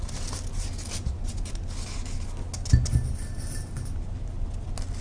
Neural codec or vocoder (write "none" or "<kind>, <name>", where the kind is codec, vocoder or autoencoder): none